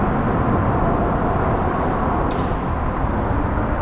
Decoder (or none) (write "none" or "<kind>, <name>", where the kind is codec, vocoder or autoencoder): none